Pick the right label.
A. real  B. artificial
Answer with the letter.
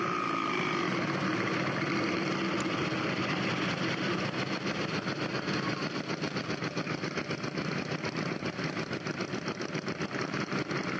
A